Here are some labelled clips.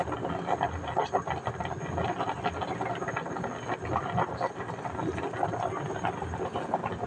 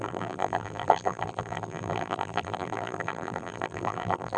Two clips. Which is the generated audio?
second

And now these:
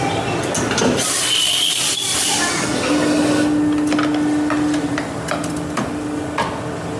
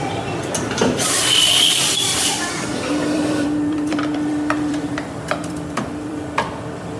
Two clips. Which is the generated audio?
second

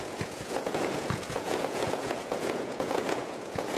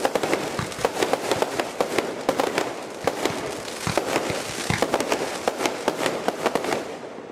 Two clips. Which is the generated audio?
first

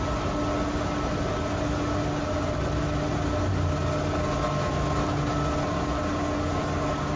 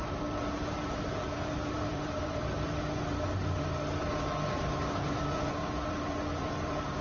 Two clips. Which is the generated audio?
second